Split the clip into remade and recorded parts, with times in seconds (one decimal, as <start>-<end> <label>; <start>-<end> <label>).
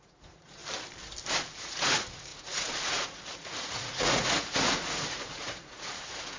0.0-0.6 remade; 0.6-1.5 recorded; 1.5-6.4 remade